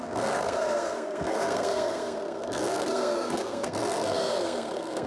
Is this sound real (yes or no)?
no